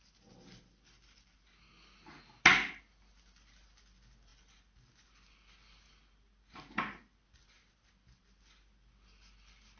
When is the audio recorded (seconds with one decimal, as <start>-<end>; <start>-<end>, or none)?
0.0-9.8